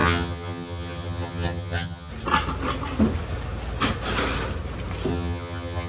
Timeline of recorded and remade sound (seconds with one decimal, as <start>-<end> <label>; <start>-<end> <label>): 0.0-2.1 remade; 2.1-5.1 recorded; 5.1-5.9 remade